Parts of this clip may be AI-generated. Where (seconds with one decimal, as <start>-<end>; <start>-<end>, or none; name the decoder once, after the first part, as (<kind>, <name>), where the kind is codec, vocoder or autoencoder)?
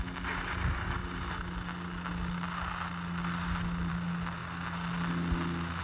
none